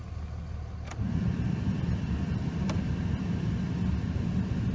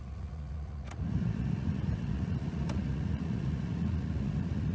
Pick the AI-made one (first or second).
second